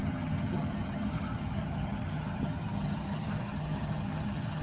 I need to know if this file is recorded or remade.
remade